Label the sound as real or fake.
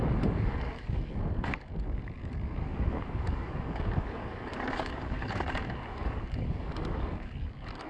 fake